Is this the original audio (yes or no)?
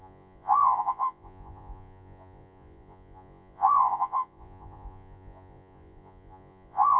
no